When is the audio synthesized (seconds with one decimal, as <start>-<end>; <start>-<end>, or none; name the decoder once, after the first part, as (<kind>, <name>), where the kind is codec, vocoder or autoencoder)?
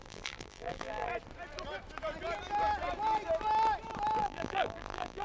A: 0.0-1.1 (vocoder, BigVGAN v2); 4.2-5.2